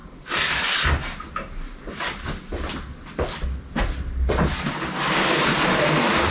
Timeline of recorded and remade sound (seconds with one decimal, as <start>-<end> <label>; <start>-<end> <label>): 0.0-6.3 recorded